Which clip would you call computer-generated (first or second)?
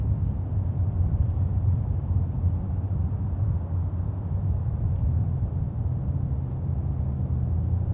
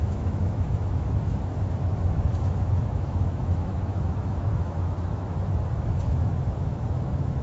second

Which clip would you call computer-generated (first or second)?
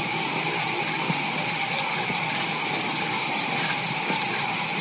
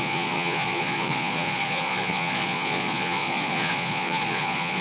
second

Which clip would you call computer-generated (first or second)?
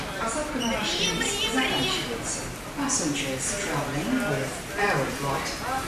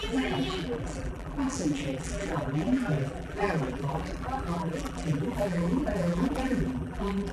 second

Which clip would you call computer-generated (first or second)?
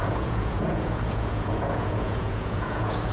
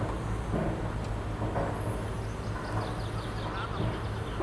first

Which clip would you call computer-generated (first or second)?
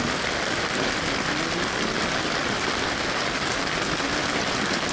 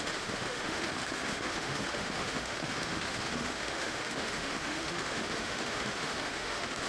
second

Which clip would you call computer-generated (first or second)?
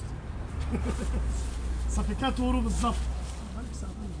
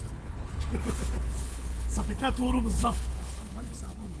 second